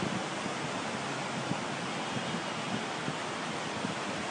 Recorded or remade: recorded